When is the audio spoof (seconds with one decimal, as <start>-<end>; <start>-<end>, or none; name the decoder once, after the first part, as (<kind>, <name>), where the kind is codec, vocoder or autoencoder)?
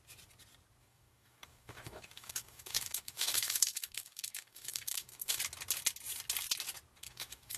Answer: 0.8-5.4 (codec, DAC); 7.0-7.6